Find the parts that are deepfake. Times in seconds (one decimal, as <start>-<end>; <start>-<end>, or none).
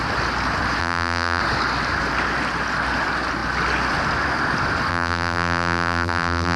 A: 0.8-1.4; 4.9-6.6